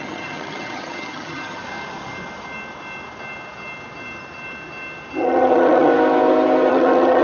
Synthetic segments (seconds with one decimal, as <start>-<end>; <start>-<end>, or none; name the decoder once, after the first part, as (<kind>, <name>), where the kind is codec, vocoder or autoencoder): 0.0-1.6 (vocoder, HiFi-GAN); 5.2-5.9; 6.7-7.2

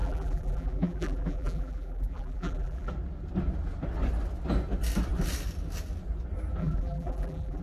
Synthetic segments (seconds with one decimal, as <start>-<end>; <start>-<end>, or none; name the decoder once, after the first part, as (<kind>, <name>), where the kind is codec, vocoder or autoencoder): 0.0-2.9 (vocoder, BigVGAN v2); 6.6-7.6

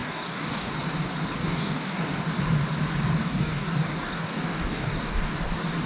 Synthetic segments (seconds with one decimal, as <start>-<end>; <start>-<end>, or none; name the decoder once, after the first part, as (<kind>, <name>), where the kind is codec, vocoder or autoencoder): 0.0-0.7 (codec, DAC); 1.4-2.2; 3.2-5.3

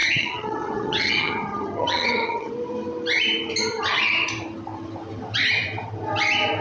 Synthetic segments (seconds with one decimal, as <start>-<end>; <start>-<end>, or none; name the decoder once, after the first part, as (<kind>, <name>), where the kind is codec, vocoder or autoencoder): 0.0-2.5 (vocoder, HiFi-GAN)

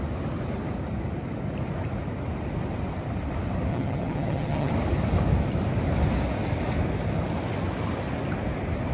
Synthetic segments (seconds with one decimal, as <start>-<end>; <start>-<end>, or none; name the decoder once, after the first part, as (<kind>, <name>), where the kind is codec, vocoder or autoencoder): 3.7-4.7 (vocoder, HiFi-GAN)

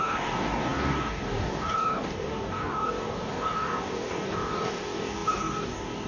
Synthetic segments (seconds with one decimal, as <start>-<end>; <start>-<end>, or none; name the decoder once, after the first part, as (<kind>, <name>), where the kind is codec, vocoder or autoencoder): 0.0-6.1 (codec, DAC)